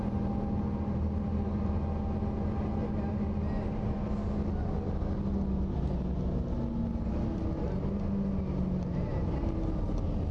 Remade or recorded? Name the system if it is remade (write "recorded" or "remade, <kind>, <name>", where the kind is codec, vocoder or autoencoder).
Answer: recorded